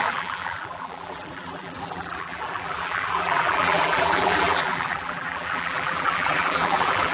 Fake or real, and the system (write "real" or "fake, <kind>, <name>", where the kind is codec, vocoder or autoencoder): fake, vocoder, BigVGAN v2